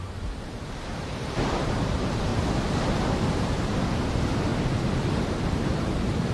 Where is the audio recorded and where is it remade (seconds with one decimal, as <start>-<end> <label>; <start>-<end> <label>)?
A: 0.0-2.3 remade; 2.3-4.1 recorded; 4.1-4.5 remade; 4.5-5.1 recorded; 5.1-6.3 remade